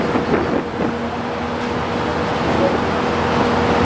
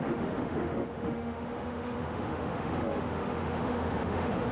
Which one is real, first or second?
first